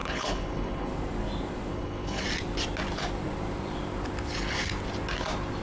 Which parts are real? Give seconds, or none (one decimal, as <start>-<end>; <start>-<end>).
0.9-1.7; 2.2-5.6